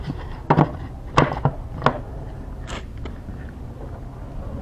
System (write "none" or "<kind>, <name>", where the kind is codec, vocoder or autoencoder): none